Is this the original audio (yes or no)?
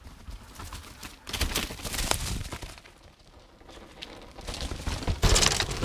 yes